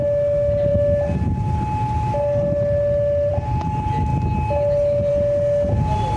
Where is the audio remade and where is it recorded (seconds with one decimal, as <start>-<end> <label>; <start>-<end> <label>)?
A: 0.0-6.2 recorded